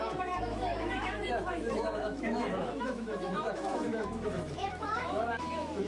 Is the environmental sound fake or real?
fake